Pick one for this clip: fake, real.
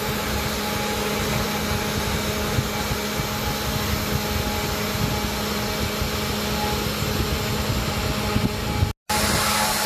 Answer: real